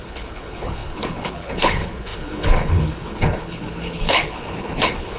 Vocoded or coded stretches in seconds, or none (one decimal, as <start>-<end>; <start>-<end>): 0.0-5.2